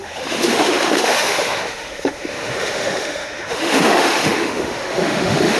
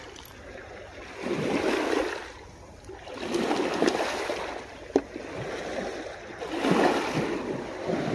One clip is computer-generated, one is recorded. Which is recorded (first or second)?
second